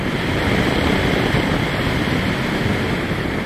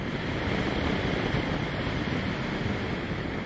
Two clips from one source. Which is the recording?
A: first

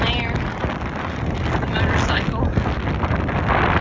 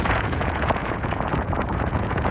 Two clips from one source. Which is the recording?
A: first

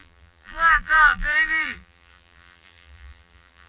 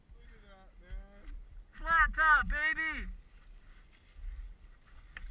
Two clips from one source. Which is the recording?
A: second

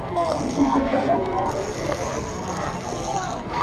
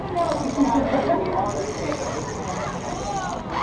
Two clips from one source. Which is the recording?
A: second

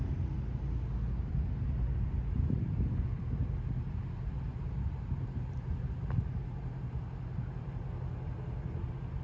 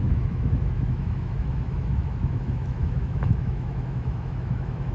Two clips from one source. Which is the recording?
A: first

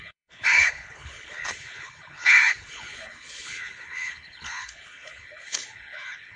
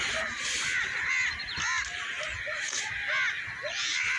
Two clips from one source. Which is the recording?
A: second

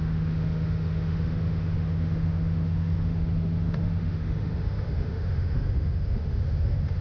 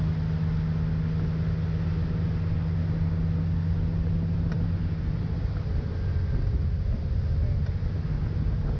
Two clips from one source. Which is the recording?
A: second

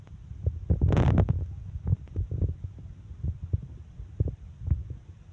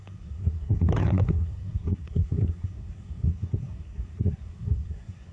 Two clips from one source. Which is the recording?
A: first